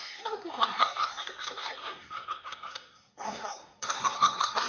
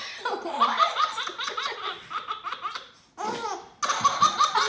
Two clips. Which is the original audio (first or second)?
second